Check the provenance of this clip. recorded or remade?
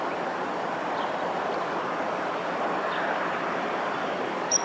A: remade